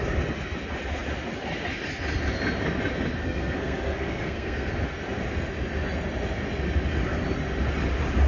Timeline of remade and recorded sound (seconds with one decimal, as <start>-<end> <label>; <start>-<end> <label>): 0.0-3.2 recorded; 3.2-4.7 remade; 4.7-8.3 recorded